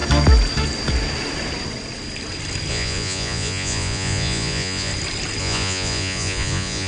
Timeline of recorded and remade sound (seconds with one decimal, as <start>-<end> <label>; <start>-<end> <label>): 0.0-2.7 recorded; 2.7-4.9 remade; 4.9-5.4 recorded; 5.4-6.9 remade